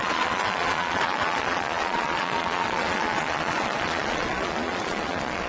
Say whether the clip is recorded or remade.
remade